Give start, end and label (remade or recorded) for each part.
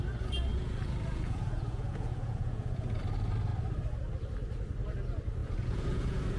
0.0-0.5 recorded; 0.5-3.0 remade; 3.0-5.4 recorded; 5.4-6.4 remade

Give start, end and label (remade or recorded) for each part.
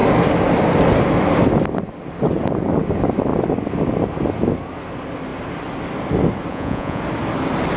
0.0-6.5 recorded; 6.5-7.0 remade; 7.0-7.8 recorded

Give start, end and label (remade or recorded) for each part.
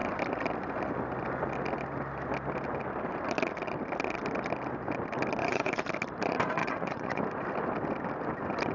0.0-5.4 recorded; 5.4-5.9 remade; 5.9-6.6 recorded; 6.6-7.2 remade; 7.2-8.7 recorded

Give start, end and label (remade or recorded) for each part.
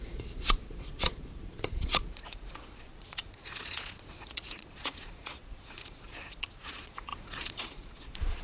0.0-8.4 remade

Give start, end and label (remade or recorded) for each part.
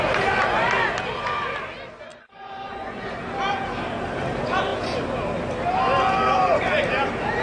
0.0-2.1 recorded; 2.1-3.1 remade; 3.1-7.4 recorded